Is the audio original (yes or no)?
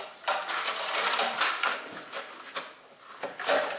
yes